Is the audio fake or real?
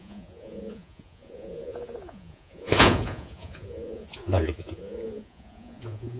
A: fake